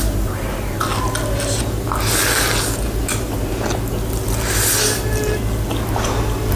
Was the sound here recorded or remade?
recorded